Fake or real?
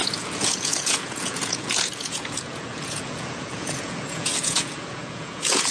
fake